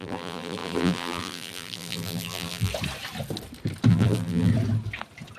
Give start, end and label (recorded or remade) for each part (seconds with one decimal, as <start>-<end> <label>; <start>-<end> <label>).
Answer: 0.0-2.7 remade; 2.7-3.9 recorded; 3.9-4.5 remade; 4.5-5.4 recorded